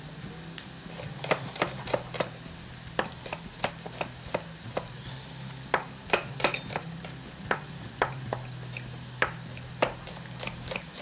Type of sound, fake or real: real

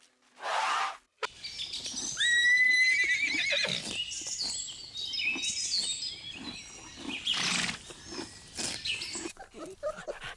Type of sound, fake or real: real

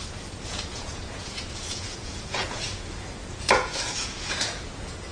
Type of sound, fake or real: fake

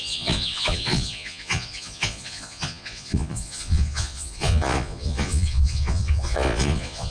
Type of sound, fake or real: fake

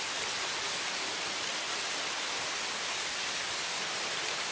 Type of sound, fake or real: real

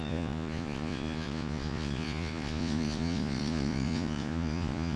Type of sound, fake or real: fake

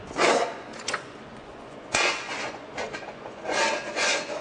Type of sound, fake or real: fake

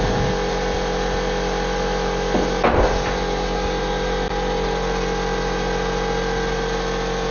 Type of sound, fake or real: real